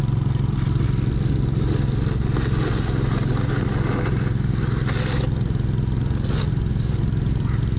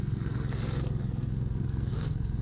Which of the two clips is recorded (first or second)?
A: first